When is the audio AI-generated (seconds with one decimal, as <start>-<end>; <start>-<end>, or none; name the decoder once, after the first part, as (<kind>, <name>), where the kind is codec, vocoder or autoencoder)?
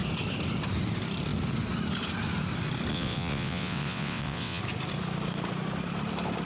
2.9-4.6 (vocoder, WaveNeXt)